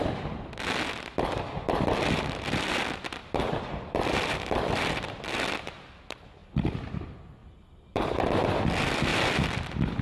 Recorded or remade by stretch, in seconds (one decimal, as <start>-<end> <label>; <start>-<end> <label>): 0.0-3.2 recorded; 3.2-5.3 remade; 5.3-7.4 recorded; 7.4-8.6 remade; 8.6-10.0 recorded